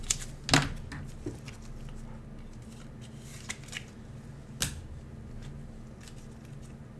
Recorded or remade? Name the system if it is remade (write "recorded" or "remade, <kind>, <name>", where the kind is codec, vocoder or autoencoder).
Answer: recorded